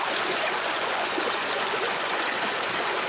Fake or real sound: fake